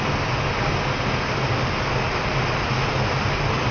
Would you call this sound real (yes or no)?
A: yes